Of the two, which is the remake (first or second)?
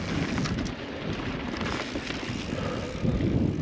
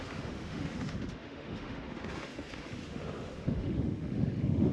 second